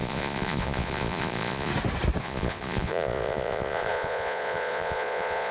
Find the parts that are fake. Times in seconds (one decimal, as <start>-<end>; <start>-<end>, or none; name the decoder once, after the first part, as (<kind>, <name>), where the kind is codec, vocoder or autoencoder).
0.0-1.7 (vocoder, Vocos); 2.2-5.5